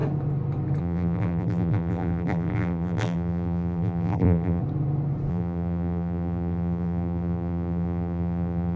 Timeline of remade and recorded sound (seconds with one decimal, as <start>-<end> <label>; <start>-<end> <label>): 0.0-0.8 recorded; 0.8-4.6 remade; 4.6-5.3 recorded; 5.3-8.8 remade